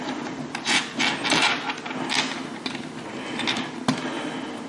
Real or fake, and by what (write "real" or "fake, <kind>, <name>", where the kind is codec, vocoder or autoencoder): real